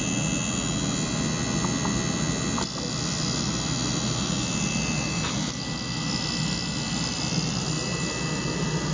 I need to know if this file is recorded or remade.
recorded